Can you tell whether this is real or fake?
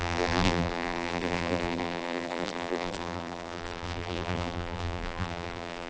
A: fake